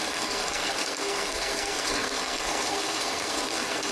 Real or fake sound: fake